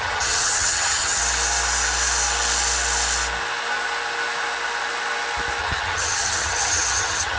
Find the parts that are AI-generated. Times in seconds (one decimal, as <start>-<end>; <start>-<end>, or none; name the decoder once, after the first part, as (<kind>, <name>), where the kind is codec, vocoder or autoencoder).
0.0-1.2 (vocoder, HiFi-GAN); 5.6-7.4